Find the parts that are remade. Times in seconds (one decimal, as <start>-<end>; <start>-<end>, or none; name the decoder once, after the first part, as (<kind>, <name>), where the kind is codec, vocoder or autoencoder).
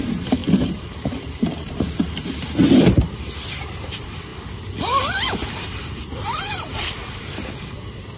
0.0-8.2 (vocoder, BigVGAN v2)